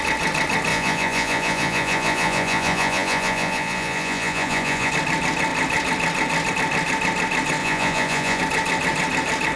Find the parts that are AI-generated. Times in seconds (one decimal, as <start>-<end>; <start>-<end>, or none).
0.7-4.9; 7.6-8.4